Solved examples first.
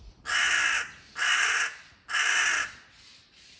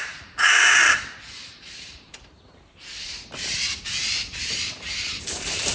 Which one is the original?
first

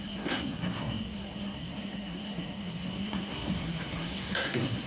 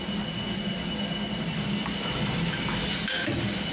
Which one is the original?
second